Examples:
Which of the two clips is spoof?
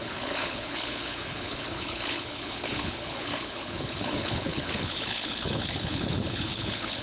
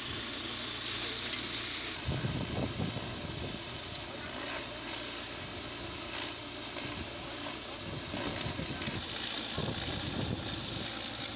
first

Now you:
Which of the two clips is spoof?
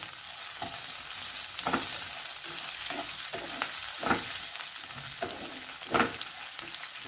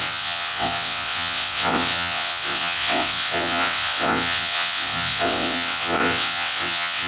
second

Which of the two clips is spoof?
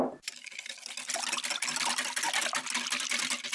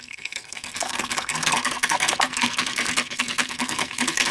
second